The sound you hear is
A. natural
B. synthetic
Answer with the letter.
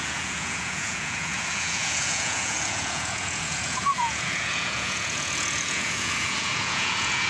B